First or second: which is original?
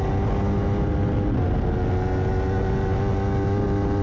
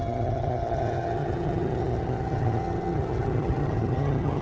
first